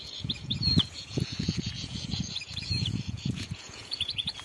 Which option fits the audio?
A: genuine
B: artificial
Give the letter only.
B